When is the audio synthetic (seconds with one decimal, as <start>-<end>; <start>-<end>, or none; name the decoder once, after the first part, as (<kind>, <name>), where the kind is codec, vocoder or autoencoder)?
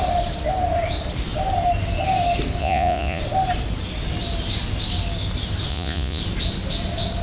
2.6-3.2 (vocoder, Vocos); 5.7-6.2